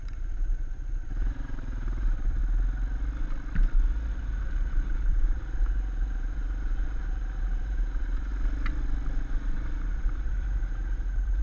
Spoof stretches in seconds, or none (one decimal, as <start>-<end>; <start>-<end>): 0.0-2.4; 4.1-8.3; 9.2-11.4